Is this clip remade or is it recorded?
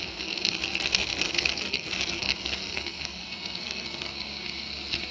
remade